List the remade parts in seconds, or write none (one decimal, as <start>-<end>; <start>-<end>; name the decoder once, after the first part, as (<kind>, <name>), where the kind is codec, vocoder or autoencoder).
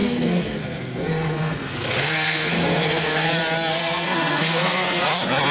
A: 0.0-3.3 (codec, SNAC); 3.7-5.0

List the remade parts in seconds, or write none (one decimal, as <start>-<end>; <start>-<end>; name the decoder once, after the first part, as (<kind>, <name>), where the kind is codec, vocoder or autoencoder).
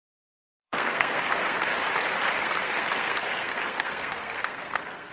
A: 0.0-1.7 (codec, SNAC); 2.4-5.1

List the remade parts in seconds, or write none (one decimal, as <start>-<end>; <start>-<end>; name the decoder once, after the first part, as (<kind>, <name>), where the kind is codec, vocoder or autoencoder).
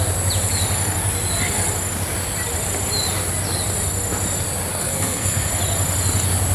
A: 4.7-5.5 (codec, SNAC)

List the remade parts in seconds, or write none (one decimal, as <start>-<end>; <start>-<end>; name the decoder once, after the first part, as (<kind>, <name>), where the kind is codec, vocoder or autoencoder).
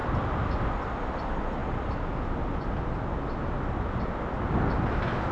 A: none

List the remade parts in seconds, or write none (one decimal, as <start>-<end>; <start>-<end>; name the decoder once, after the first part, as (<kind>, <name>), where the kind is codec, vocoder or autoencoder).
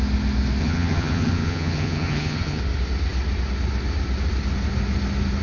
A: 0.6-2.6 (vocoder, HiFi-GAN)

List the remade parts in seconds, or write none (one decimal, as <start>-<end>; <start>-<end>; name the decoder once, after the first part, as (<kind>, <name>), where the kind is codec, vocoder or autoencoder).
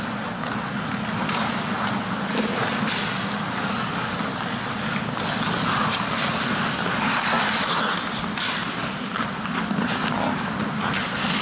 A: none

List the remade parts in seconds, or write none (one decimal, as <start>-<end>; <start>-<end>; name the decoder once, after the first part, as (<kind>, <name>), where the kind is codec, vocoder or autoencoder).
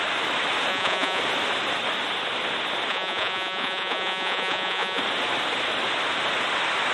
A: 0.7-1.2 (vocoder, Vocos); 2.9-5.0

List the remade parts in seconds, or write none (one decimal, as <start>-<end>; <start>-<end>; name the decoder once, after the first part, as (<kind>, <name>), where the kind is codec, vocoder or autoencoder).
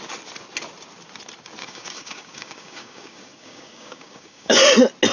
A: 1.6-4.6 (codec, DAC)